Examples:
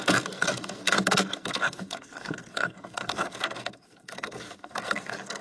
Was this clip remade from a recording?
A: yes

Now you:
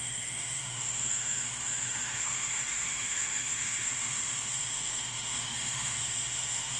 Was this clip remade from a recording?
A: yes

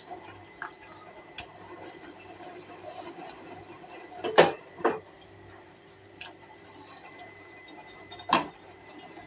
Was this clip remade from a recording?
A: yes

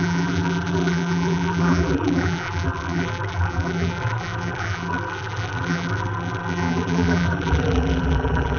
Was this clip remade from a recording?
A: yes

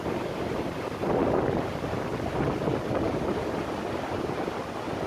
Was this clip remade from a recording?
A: no